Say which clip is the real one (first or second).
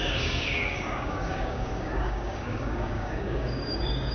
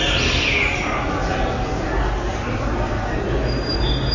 second